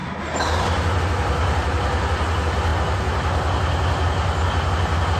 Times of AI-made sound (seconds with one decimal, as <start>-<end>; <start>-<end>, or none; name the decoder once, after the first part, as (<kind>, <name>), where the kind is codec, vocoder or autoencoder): none